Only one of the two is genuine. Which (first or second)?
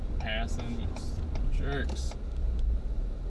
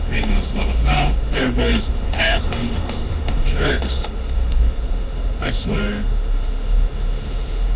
first